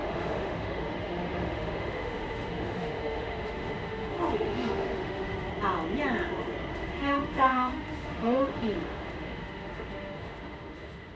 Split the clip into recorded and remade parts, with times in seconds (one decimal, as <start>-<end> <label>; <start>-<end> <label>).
0.0-5.5 remade; 5.5-6.7 recorded; 6.7-11.2 remade